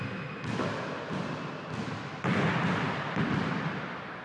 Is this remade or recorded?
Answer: recorded